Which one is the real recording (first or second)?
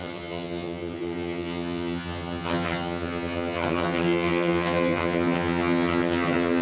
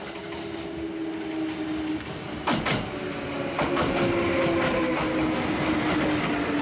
second